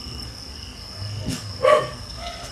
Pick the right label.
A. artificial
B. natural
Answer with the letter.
A